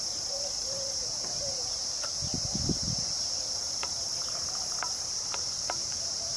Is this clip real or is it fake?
fake